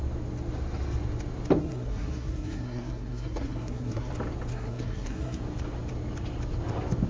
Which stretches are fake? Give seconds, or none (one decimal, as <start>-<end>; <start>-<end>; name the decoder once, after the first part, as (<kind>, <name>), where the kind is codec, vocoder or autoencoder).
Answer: 1.6-4.1 (codec, SNAC); 4.5-5.4